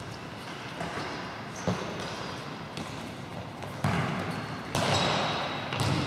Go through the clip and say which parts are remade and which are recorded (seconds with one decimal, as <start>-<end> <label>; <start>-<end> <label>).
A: 0.0-6.1 recorded